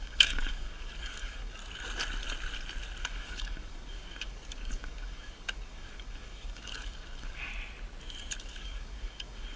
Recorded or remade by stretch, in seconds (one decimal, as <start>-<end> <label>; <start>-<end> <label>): 0.0-1.6 remade; 1.6-3.0 recorded; 3.0-7.5 remade; 7.5-8.4 recorded; 8.4-9.6 remade